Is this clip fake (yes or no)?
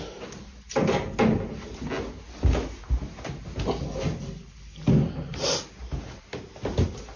no